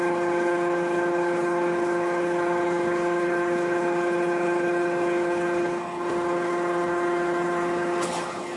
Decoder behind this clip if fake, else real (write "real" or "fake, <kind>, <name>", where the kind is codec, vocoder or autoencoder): fake, codec, HILCodec